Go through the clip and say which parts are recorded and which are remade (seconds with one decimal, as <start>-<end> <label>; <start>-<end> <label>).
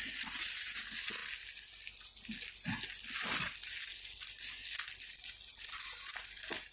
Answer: 0.0-6.7 recorded